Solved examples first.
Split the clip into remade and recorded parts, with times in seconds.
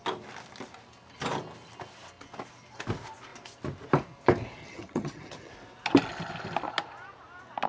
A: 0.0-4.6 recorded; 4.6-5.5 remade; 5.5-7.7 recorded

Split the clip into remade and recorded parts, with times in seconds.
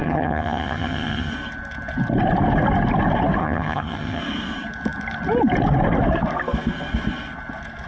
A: 0.0-1.3 remade; 1.3-3.4 recorded; 3.4-4.2 remade; 4.2-7.9 recorded